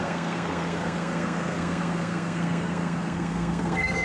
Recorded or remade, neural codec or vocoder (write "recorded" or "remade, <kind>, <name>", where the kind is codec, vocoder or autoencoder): remade, codec, SNAC